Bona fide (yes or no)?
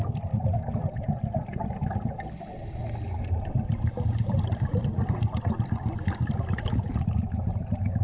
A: yes